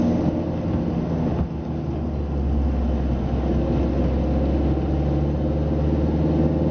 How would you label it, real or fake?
real